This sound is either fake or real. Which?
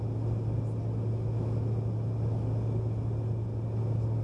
real